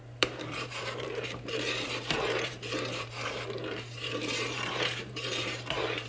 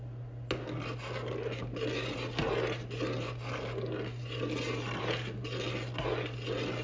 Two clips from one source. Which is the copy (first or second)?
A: first